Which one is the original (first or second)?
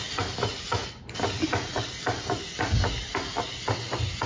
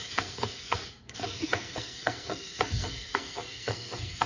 first